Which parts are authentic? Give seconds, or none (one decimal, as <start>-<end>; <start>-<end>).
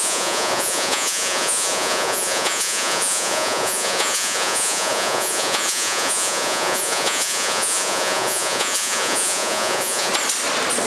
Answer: 10.1-10.9